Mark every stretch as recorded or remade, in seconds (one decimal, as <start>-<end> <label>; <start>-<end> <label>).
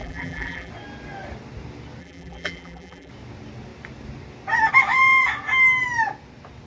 0.0-0.7 remade; 0.7-2.0 recorded; 2.0-3.1 remade; 3.1-6.7 recorded